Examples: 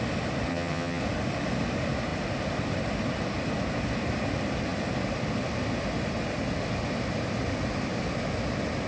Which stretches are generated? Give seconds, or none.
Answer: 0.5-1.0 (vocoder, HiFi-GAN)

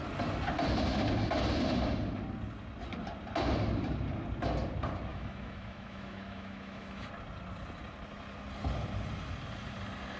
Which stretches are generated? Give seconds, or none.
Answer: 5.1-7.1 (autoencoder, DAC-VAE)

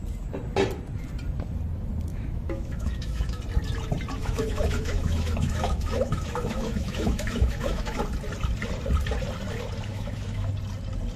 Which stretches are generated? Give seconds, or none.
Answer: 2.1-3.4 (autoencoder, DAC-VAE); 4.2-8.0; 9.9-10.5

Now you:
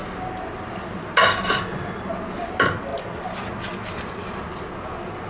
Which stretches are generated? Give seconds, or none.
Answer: none

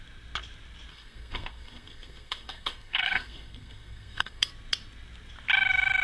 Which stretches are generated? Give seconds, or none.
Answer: 0.9-4.5 (codec, SNAC)

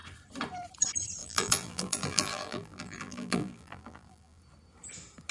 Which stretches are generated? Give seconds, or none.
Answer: 1.2-4.4 (vocoder, BigVGAN v2)